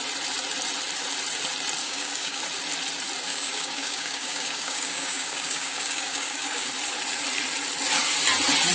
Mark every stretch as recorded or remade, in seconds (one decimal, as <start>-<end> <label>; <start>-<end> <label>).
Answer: 0.0-1.8 recorded; 1.8-2.4 remade; 2.4-3.3 recorded; 3.3-6.7 remade; 6.7-8.7 recorded